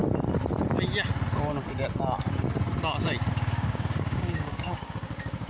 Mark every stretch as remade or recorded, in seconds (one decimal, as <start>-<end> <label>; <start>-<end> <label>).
0.0-3.3 recorded; 3.3-5.5 remade